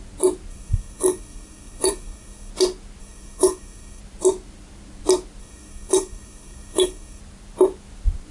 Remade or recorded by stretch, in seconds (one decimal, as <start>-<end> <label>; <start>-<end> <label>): 0.0-0.5 recorded; 0.5-2.5 remade; 2.5-3.0 recorded; 3.0-4.0 remade; 4.0-5.4 recorded; 5.4-7.2 remade; 7.2-8.3 recorded